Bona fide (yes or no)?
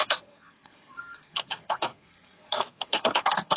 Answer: no